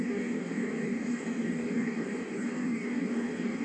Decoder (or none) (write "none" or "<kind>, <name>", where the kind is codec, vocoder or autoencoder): codec, DAC